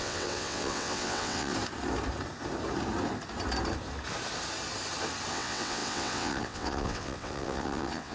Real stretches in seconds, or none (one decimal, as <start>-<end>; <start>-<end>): 1.5-5.3